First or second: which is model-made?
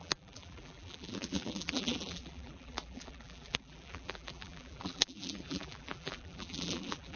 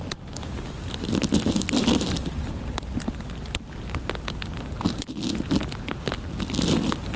first